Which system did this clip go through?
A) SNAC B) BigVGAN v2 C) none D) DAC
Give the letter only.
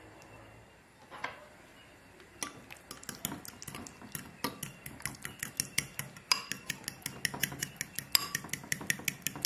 C